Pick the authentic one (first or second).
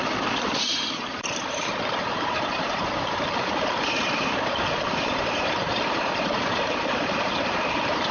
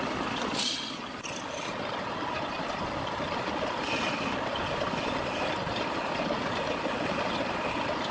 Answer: second